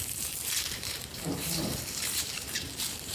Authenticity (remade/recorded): remade